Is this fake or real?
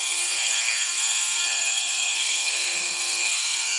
fake